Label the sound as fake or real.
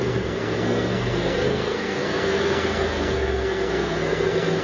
fake